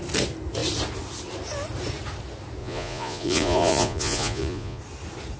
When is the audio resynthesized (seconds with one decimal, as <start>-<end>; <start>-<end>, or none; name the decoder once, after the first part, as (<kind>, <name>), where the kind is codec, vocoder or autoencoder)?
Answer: 2.6-4.8 (vocoder, Vocos)